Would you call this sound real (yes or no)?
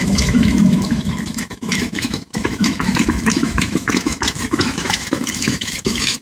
no